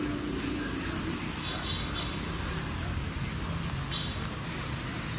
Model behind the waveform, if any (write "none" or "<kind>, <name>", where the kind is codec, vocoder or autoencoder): none